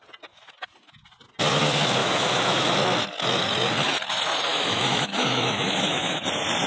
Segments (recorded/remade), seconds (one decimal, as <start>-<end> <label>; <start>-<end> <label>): 0.0-2.0 recorded; 2.0-2.7 remade; 2.7-4.5 recorded; 4.5-6.2 remade; 6.2-6.7 recorded